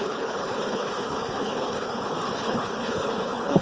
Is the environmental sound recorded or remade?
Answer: remade